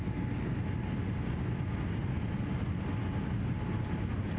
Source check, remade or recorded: recorded